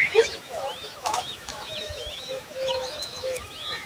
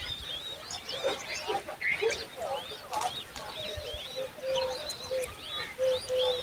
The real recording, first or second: second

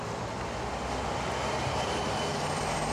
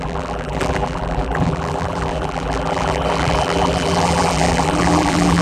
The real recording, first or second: first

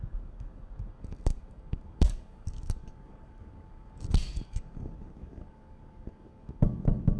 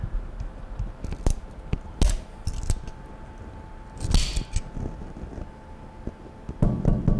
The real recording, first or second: second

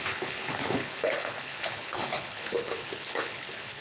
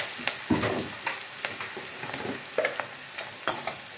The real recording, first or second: second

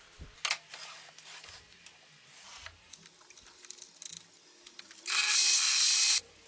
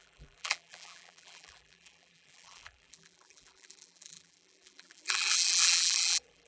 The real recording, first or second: first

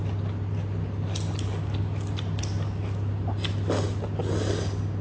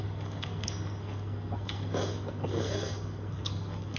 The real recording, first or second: first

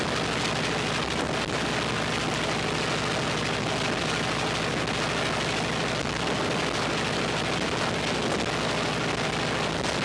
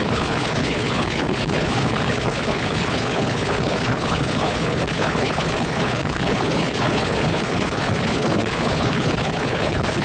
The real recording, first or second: first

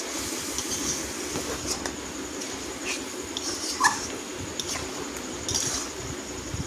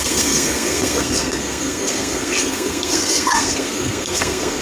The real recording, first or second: first